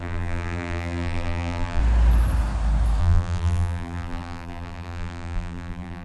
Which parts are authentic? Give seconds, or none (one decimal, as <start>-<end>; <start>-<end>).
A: 1.8-3.0